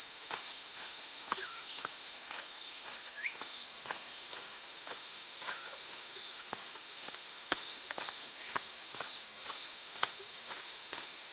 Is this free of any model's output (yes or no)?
no